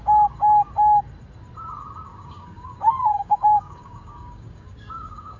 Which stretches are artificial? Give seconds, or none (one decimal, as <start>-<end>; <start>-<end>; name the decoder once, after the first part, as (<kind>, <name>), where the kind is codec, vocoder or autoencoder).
2.1-5.4 (codec, DAC)